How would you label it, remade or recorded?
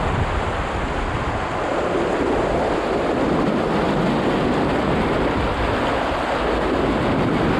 recorded